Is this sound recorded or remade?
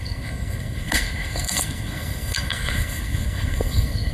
remade